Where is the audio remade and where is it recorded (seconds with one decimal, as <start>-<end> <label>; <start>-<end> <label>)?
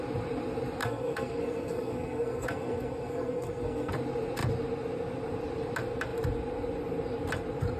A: 0.0-0.8 recorded; 0.8-3.9 remade; 3.9-7.8 recorded